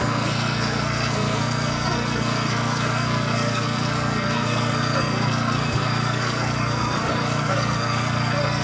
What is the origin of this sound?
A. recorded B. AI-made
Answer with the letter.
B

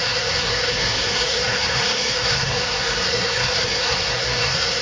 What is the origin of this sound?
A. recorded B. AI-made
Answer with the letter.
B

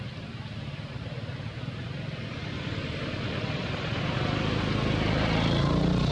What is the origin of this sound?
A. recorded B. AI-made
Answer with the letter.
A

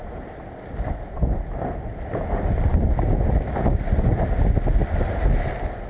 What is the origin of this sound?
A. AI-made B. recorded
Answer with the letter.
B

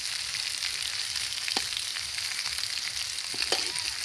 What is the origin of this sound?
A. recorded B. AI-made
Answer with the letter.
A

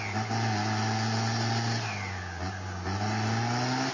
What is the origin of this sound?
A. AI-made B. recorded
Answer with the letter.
B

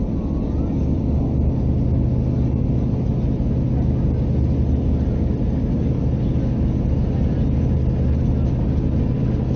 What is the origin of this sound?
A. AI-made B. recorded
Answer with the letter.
B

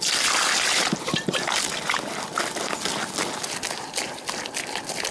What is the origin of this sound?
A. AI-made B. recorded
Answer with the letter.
B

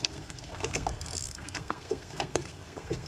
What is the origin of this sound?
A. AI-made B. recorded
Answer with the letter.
A